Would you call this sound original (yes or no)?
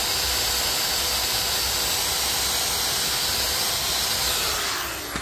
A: yes